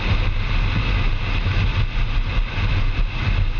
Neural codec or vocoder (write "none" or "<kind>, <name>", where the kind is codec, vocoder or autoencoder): none